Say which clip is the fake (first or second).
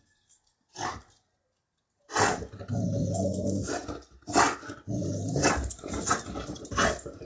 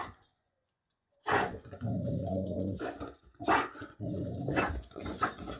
second